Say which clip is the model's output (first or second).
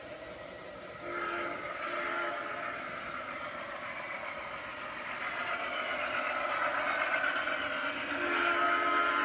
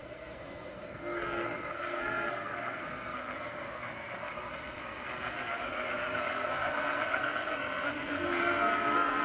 second